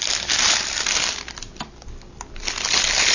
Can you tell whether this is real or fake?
real